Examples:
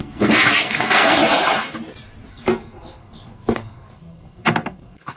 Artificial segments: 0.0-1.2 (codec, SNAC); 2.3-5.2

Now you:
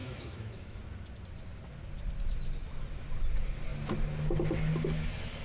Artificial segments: 0.0-0.8 (autoencoder, DAC-VAE)

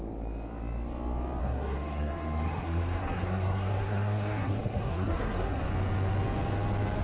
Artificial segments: 1.4-5.6 (codec, SNAC)

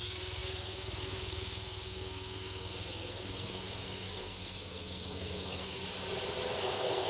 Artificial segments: 0.0-5.8 (codec, SNAC); 6.6-7.1

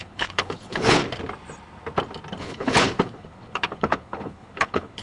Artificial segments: 0.0-1.0 (codec, HILCodec); 2.4-5.0

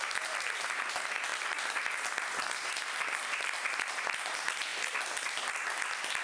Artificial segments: none